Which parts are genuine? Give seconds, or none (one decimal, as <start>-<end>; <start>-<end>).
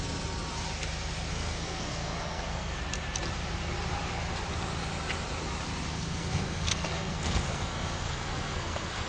0.0-1.3; 2.8-5.9